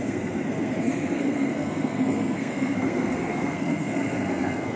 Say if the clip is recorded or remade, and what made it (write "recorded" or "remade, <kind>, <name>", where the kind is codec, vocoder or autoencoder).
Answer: remade, codec, SNAC